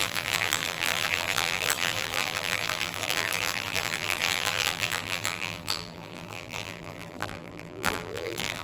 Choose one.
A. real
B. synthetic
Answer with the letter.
B